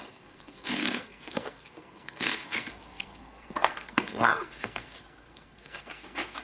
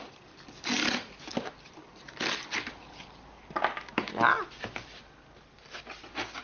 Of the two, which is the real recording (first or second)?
second